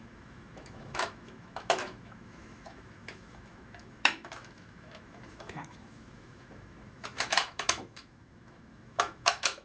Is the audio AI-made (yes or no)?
yes